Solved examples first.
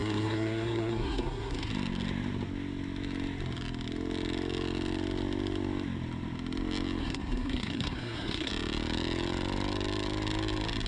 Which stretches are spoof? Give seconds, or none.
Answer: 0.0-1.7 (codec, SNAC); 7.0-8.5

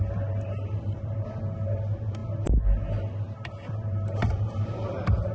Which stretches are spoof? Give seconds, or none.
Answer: none

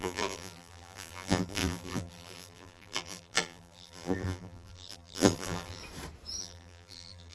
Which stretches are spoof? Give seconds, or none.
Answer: 0.0-5.8 (vocoder, BigVGAN v2); 6.4-7.3

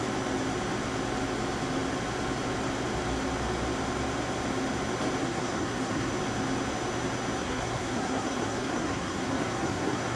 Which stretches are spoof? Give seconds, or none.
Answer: 5.2-6.1 (codec, SNAC); 7.4-10.2

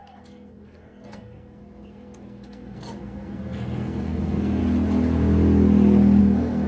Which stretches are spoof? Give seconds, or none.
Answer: 0.0-4.6 (codec, SNAC); 6.2-6.7

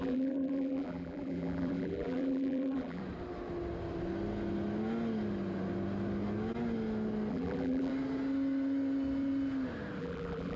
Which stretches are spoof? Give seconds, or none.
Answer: 0.0-3.0 (vocoder, BigVGAN v2); 7.3-7.9; 10.0-10.6

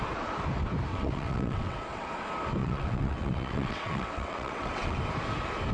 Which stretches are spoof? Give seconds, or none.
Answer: 0.9-2.1 (vocoder, WaveNeXt); 2.6-5.0